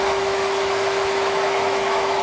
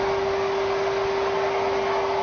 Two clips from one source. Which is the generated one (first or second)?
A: first